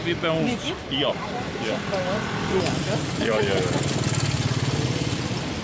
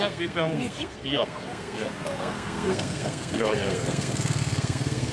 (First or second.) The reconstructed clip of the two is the second